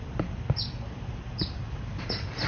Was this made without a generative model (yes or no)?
yes